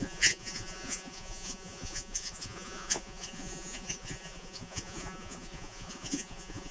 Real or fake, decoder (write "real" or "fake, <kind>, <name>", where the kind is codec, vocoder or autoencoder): fake, vocoder, Vocos